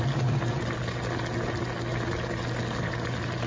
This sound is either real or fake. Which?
real